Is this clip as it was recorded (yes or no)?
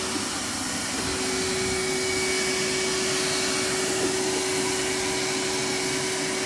yes